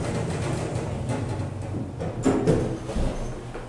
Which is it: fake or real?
real